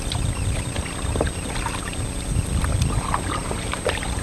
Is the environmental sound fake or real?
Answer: real